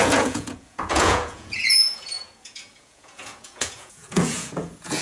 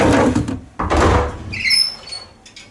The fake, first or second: first